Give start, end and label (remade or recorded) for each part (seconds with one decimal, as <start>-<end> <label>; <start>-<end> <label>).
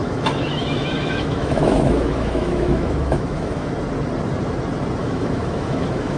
0.0-3.7 remade; 3.7-5.0 recorded; 5.0-6.2 remade